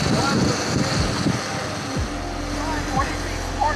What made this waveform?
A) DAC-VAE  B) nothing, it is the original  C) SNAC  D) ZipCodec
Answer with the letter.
B